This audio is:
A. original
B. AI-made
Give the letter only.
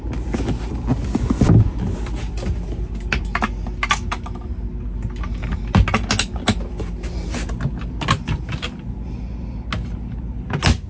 A